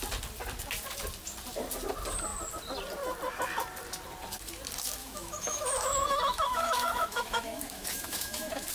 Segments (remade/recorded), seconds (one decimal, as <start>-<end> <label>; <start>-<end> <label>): 0.0-5.0 recorded; 5.0-8.7 remade